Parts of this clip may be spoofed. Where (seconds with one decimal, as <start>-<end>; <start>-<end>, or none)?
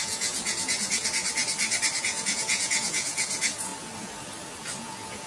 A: 0.0-1.0; 2.0-3.7; 4.8-5.3